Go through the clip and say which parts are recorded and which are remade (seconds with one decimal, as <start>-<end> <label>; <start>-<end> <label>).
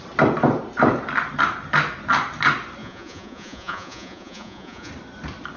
0.0-2.8 recorded; 2.8-4.9 remade; 4.9-5.6 recorded